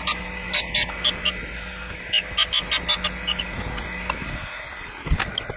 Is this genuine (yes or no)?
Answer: yes